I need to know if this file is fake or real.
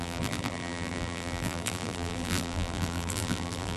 fake